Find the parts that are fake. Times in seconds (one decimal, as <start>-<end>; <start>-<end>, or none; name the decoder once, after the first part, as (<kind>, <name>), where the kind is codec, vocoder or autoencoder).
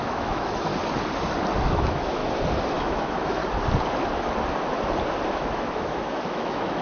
0.0-0.7 (autoencoder, DAC-VAE); 1.7-2.2; 2.7-3.4; 5.3-6.8